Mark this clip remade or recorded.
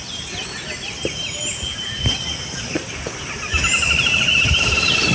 recorded